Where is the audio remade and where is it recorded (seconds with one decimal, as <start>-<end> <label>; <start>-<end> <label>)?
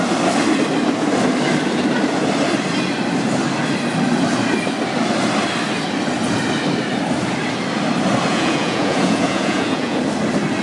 0.0-8.3 recorded; 8.3-10.0 remade; 10.0-10.6 recorded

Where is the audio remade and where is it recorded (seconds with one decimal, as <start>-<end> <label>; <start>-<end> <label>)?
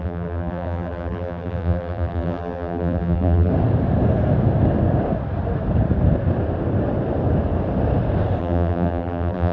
0.0-3.5 remade; 3.5-8.4 recorded; 8.4-9.5 remade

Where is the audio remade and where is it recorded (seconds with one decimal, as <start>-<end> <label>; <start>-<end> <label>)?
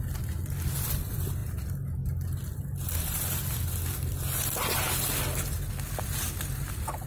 0.0-7.1 recorded